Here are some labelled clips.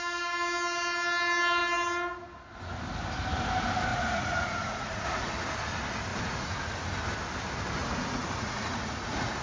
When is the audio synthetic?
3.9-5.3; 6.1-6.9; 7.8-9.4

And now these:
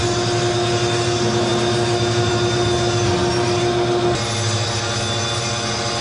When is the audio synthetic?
none

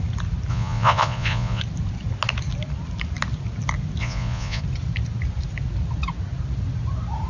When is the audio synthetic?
0.5-1.6; 4.0-4.6